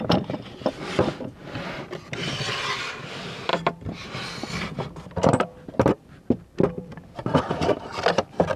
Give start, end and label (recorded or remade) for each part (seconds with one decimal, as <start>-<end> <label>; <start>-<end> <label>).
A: 0.0-8.6 recorded